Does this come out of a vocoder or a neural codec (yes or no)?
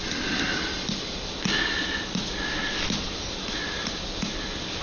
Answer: no